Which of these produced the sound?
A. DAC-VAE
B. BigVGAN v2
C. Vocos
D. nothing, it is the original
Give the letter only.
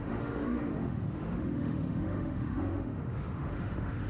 A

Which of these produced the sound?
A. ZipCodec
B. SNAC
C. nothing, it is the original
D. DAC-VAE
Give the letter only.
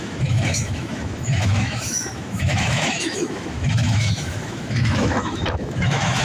D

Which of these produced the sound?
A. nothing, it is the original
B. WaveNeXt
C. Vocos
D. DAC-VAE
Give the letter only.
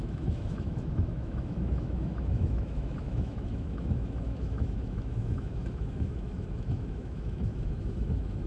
D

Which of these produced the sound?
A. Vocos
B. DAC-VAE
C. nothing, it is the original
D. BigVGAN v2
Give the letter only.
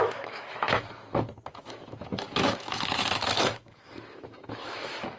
B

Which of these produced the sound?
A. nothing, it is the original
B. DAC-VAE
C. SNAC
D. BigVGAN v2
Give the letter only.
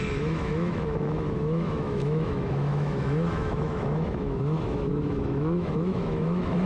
B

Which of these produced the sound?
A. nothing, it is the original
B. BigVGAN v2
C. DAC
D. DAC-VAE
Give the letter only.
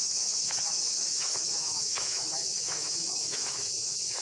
D